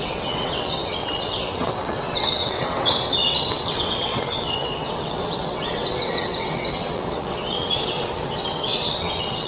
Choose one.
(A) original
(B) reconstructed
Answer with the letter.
B